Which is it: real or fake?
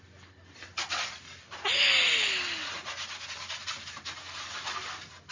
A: real